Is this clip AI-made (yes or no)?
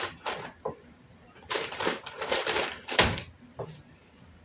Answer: yes